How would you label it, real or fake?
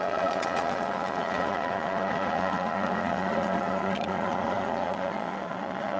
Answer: fake